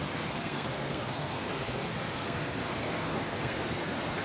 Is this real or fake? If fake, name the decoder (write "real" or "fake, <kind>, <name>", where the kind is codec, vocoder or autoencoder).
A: fake, codec, SNAC